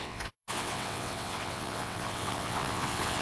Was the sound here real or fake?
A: fake